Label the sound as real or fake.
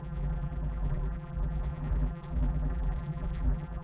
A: fake